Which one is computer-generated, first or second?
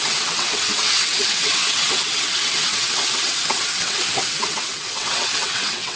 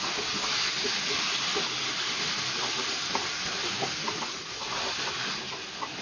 first